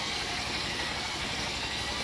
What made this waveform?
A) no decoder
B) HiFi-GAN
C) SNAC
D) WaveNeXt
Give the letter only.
C